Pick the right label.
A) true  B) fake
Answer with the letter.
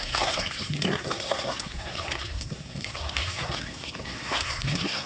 B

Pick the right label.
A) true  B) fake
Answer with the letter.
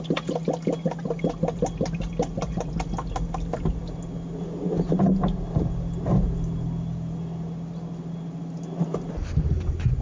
A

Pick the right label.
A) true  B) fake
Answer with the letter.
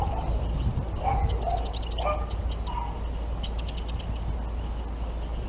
A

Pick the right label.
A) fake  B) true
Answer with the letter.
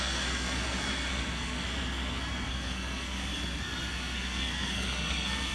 A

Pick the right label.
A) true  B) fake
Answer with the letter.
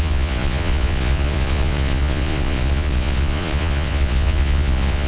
B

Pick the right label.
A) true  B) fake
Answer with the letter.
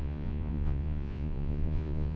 B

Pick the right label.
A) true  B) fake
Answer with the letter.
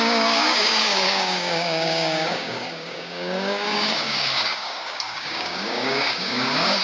B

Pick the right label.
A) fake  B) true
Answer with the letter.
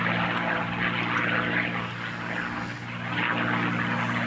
B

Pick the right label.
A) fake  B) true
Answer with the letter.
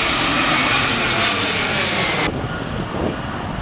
B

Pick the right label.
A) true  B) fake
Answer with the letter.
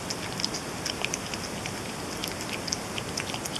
A